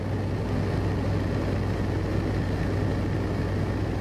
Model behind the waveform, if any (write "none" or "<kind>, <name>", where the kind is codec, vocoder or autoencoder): none